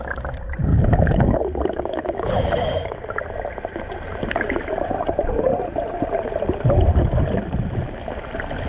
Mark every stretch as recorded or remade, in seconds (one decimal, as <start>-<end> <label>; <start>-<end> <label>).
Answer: 0.0-0.7 recorded; 0.7-3.0 remade; 3.0-8.7 recorded